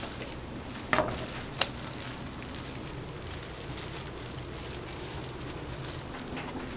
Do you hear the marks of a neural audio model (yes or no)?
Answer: no